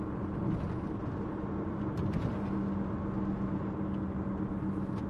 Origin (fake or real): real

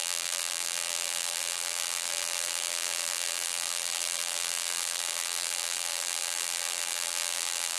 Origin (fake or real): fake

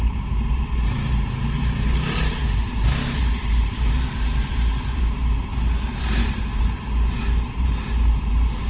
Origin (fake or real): fake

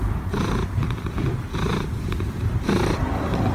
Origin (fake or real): fake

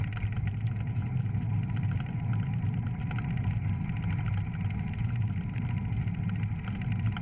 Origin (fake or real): real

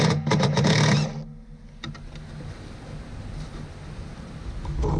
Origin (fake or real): real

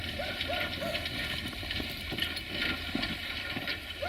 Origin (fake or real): real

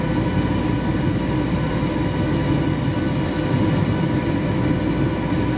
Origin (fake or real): real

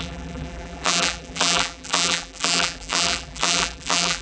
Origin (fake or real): fake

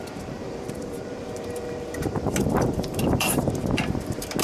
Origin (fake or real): fake